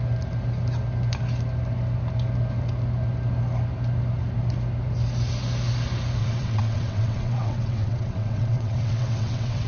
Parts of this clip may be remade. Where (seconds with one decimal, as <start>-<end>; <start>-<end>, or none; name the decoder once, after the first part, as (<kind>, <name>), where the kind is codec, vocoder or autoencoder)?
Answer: 6.2-9.7 (vocoder, WaveNeXt)